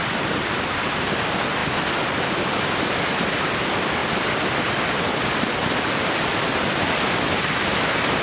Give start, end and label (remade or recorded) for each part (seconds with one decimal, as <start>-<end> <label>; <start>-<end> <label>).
0.0-1.0 remade; 1.0-8.2 recorded